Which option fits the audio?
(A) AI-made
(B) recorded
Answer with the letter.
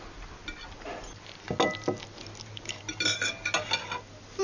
B